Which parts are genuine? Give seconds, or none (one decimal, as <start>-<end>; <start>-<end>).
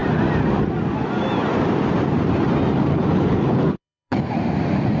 0.0-2.9; 4.3-5.0